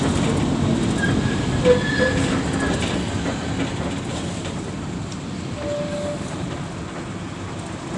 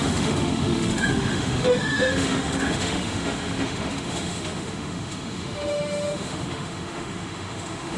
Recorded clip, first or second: first